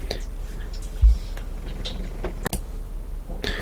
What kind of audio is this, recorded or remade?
recorded